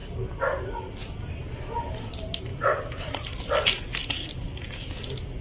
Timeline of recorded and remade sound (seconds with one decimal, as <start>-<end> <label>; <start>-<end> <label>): 0.0-2.5 recorded; 2.5-3.4 remade; 3.4-5.4 recorded